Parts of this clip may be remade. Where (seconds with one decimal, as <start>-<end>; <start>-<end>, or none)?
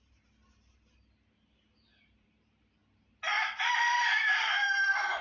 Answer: 0.0-5.2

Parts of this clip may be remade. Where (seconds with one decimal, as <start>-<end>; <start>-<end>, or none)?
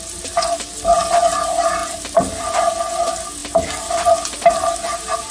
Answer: none